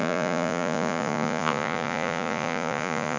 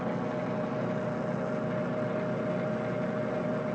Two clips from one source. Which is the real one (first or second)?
second